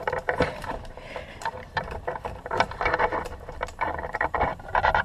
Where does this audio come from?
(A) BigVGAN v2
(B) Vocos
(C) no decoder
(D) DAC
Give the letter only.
A